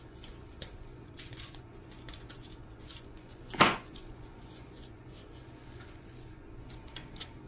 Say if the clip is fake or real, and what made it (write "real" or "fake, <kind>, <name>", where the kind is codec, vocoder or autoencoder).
fake, vocoder, Vocos